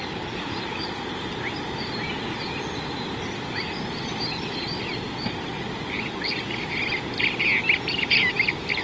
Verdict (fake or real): real